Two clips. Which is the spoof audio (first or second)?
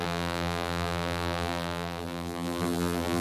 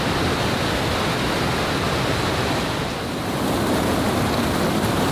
first